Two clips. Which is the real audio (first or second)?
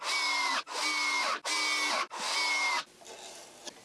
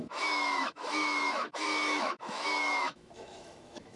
first